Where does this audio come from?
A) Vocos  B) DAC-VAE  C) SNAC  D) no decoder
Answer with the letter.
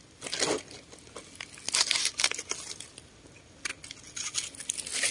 D